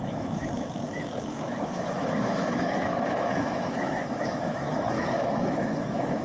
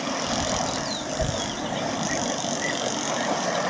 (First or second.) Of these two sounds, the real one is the second